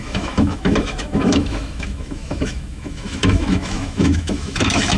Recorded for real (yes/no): no